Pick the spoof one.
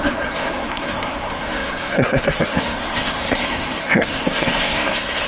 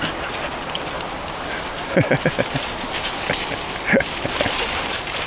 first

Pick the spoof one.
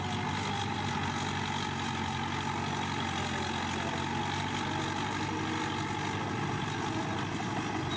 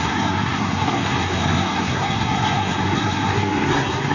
second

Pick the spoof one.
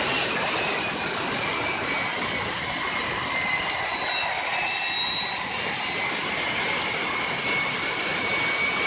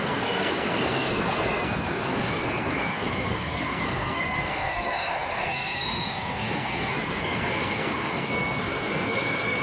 second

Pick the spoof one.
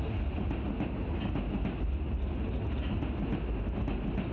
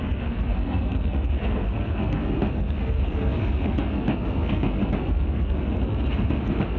second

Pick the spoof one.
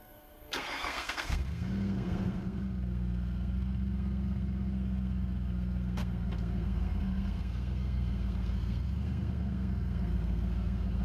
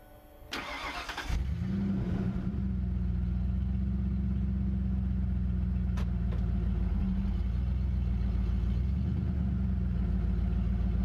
first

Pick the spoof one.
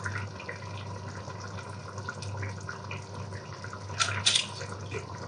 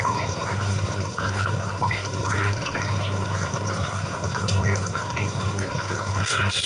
second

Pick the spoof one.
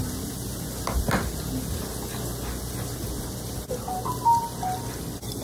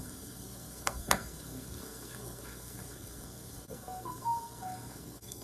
second